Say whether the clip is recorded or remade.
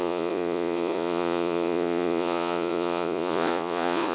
remade